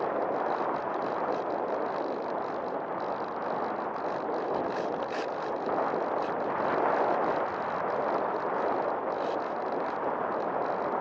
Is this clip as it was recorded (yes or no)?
yes